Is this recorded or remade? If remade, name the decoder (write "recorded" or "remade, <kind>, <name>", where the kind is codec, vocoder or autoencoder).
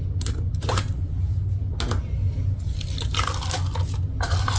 recorded